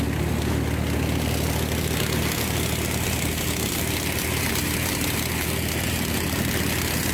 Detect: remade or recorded recorded